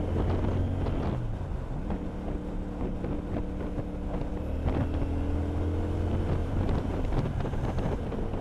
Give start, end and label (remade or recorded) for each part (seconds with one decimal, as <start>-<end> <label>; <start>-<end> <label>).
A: 0.0-6.4 recorded; 6.4-8.4 remade